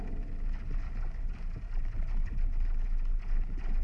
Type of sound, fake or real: real